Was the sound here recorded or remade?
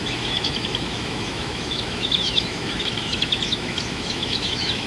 remade